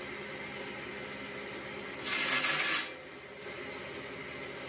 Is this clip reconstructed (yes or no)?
no